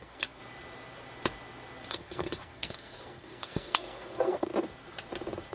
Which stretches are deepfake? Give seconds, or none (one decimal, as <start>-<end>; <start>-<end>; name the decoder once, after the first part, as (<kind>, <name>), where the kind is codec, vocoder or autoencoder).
0.0-0.4 (codec, SNAC); 1.9-4.5